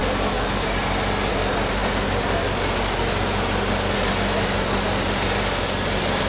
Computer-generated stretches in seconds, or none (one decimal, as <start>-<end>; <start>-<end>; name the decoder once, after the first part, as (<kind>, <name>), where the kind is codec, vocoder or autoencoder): none